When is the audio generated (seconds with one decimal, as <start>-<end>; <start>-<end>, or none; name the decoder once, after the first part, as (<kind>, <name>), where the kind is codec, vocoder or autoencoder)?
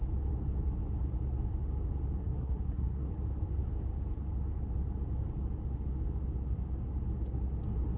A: 2.2-3.1 (codec, SNAC)